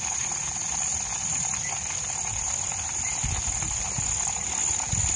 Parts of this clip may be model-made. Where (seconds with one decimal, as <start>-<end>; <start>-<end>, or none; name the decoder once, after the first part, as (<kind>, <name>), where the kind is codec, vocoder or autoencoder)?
none